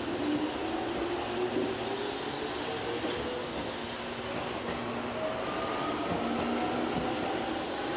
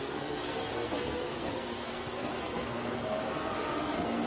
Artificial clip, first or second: second